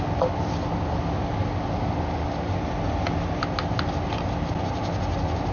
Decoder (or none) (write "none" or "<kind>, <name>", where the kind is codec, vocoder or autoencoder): none